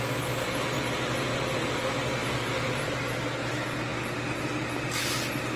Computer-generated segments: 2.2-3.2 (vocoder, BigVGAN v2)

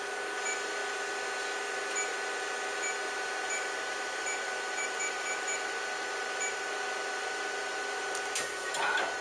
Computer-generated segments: none

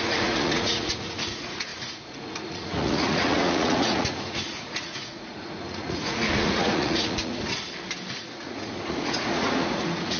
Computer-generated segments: 0.0-7.3 (vocoder, Vocos); 8.2-10.2

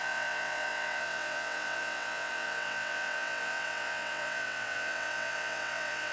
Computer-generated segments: 0.0-6.1 (vocoder, WaveNeXt)

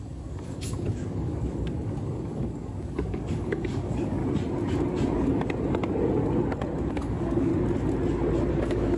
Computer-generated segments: 0.0-4.2 (codec, DAC); 6.9-7.5; 8.5-9.0